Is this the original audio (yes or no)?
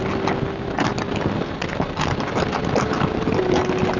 yes